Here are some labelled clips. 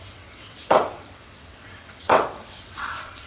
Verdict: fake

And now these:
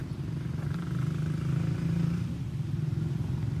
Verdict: real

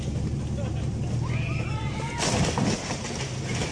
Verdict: real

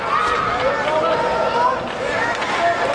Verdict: real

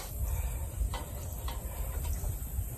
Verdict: real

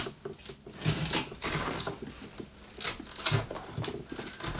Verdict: real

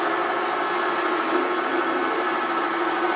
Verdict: real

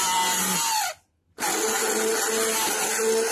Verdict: real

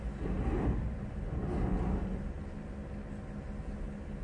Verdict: real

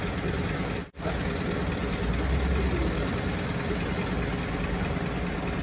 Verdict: real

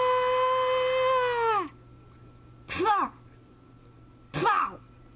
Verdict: real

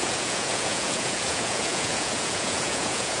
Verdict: fake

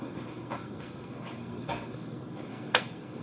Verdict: fake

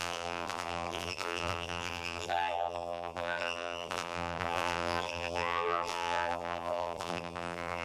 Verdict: fake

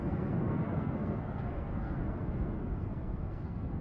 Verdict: fake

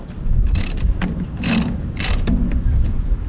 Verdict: real